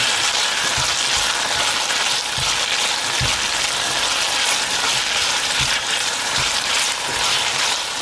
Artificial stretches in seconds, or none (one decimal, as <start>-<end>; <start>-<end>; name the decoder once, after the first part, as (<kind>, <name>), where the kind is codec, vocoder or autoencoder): 0.0-0.7 (vocoder, BigVGAN v2); 5.2-8.0